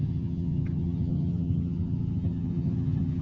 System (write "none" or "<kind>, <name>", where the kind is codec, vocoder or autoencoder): vocoder, HiFi-GAN